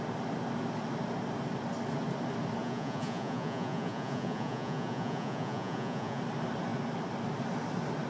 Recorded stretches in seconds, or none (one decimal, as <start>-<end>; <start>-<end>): 0.0-2.6; 6.2-8.1